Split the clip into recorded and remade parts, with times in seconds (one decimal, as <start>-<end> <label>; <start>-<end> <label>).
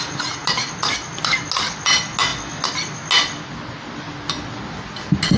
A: 0.0-5.4 recorded